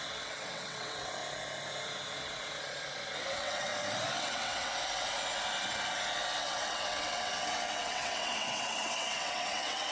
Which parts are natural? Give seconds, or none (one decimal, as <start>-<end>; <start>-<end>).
1.2-3.2; 3.7-4.2; 4.7-6.4